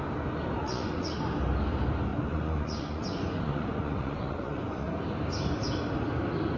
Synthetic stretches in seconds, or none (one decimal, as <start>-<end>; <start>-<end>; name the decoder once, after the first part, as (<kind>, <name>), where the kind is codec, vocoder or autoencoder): 0.6-1.1 (vocoder, Vocos); 2.1-4.9